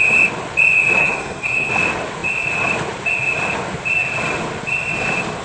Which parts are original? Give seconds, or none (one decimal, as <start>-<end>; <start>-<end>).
0.0-1.0; 1.7-5.4